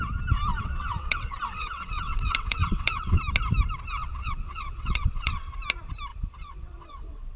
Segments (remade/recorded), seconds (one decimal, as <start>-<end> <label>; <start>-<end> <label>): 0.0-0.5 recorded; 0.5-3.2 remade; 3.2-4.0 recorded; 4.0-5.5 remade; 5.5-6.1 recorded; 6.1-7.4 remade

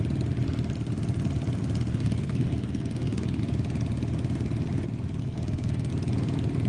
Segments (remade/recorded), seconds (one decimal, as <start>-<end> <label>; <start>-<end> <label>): 0.0-1.9 recorded; 1.9-3.4 remade; 3.4-5.2 recorded; 5.2-5.9 remade; 5.9-6.7 recorded

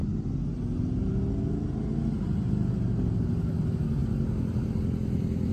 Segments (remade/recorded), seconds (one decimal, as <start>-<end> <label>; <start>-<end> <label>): 0.0-5.5 recorded

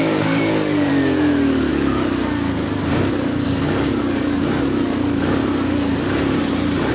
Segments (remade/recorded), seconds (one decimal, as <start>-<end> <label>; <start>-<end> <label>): 0.0-0.9 remade; 0.9-1.7 recorded; 1.7-5.4 remade; 5.4-6.9 recorded

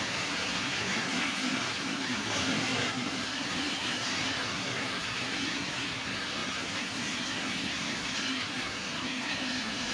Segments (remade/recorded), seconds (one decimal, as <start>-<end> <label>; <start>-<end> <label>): 0.0-9.9 remade